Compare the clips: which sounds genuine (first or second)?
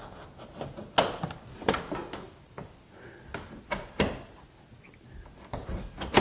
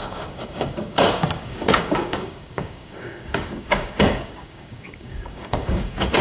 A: first